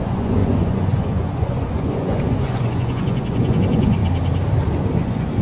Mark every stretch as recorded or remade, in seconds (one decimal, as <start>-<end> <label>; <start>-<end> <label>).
0.0-4.0 remade; 4.0-5.0 recorded; 5.0-5.4 remade